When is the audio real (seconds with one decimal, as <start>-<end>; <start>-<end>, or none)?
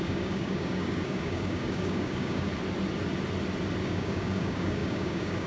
2.5-3.8